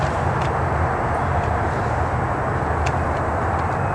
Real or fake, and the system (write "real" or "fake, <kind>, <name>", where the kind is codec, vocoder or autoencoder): real